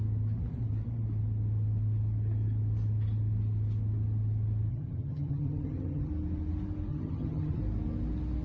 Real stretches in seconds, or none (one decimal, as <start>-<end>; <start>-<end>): 0.0-4.7; 6.1-6.9; 7.6-8.4